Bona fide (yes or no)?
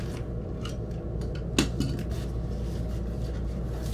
yes